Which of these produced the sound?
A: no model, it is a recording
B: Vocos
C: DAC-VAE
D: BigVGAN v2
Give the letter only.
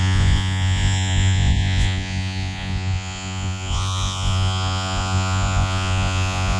B